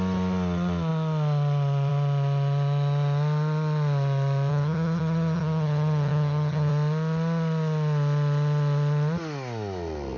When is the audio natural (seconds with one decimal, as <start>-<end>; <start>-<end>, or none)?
0.0-4.5; 6.7-10.2